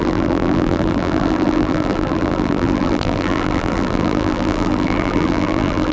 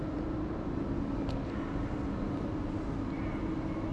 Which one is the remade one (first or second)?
first